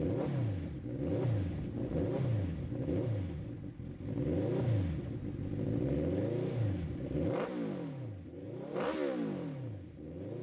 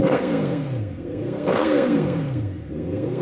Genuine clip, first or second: first